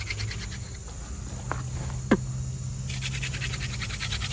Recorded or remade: recorded